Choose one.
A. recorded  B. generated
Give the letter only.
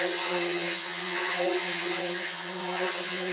B